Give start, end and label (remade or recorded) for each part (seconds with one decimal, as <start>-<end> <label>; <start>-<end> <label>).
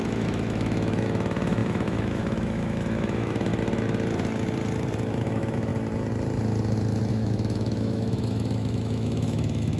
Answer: 0.0-3.5 remade; 3.5-5.2 recorded; 5.2-5.7 remade; 5.7-7.1 recorded; 7.1-9.8 remade